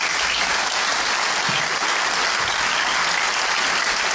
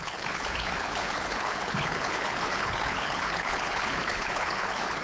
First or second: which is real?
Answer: first